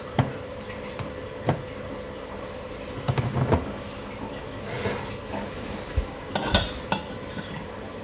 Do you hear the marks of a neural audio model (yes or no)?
no